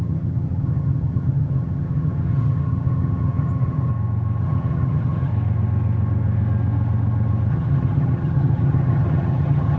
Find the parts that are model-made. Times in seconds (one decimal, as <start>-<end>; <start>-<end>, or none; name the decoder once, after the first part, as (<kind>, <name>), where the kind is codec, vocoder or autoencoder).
0.0-3.9 (vocoder, HiFi-GAN); 4.4-5.3; 7.5-9.8